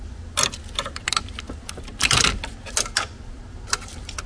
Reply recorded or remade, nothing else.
recorded